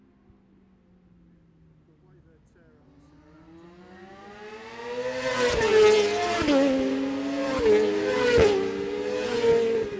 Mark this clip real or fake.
real